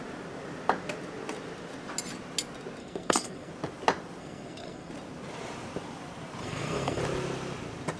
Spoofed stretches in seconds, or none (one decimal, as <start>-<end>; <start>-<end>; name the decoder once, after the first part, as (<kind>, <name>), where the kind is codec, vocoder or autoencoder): 2.8-3.5 (codec, SNAC); 4.2-4.9; 6.4-7.0